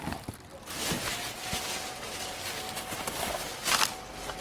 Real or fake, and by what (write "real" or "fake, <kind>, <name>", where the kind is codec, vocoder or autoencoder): real